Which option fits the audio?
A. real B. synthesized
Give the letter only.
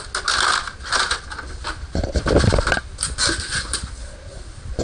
A